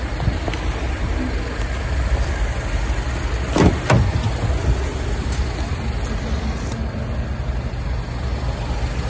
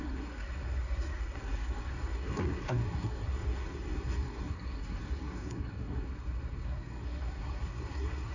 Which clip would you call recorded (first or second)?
first